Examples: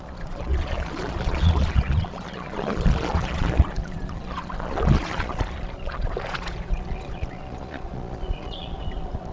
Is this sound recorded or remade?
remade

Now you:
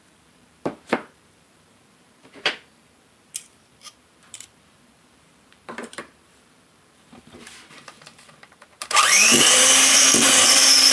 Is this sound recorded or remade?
remade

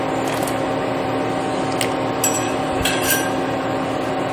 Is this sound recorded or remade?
recorded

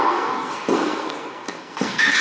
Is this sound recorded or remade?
remade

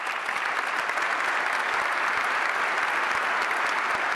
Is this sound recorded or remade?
recorded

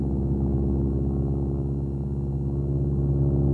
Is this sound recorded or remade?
recorded